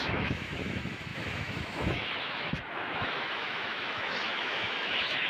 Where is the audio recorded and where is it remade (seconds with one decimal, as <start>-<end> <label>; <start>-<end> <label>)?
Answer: 0.0-5.3 remade